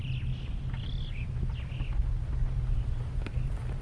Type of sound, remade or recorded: recorded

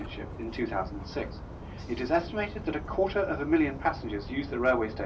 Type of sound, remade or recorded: recorded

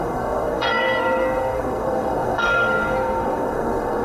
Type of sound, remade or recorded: remade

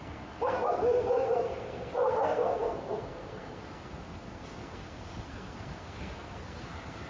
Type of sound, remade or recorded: remade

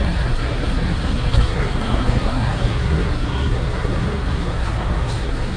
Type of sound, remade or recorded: remade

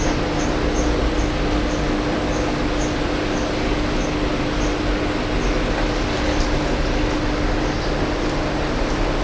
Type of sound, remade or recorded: recorded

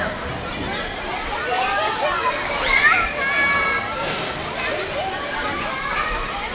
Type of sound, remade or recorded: recorded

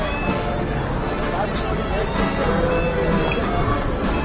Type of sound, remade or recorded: recorded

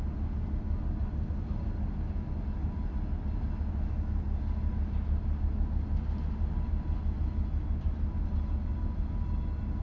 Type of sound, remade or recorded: recorded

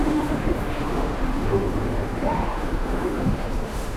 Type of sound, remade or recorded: remade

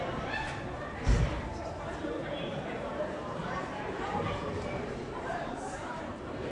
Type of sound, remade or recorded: remade